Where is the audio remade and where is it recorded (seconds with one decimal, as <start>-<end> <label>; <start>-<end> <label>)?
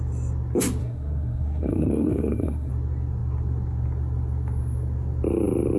0.0-0.8 recorded; 0.8-2.7 remade; 2.7-5.8 recorded